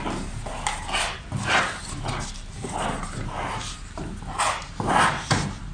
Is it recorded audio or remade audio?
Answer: recorded